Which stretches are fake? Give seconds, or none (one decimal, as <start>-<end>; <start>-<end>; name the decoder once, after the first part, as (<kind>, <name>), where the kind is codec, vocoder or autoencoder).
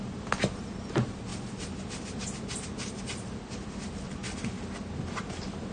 none